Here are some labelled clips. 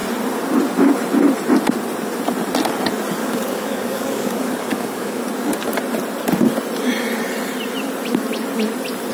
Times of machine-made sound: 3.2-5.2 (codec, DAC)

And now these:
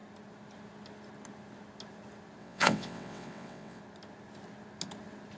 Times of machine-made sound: 2.4-3.8 (vocoder, WaveNeXt)

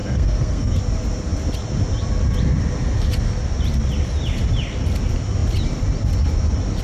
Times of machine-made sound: 0.0-0.8 (codec, SNAC)